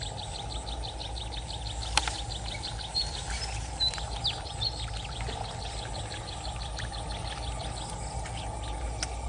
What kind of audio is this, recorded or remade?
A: recorded